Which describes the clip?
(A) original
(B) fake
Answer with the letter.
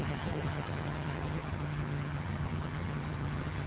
B